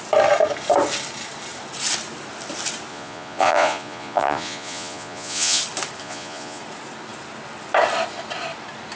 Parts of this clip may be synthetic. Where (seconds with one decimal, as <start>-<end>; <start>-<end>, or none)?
2.9-5.6; 6.0-6.6